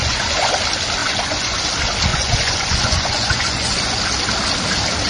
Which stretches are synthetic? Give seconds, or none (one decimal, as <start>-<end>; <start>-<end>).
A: 0.0-0.5; 1.0-1.7; 2.1-4.0